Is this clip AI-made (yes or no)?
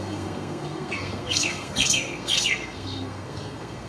yes